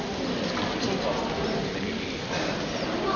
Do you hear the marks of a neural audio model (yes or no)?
no